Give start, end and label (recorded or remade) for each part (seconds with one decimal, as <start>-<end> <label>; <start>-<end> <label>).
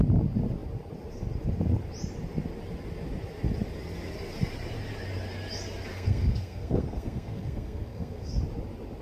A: 0.0-5.9 recorded; 5.9-8.4 remade; 8.4-9.0 recorded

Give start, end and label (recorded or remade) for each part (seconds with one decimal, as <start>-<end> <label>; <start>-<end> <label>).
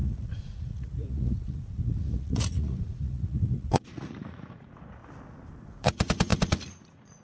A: 0.0-5.0 remade; 5.0-5.6 recorded; 5.6-7.2 remade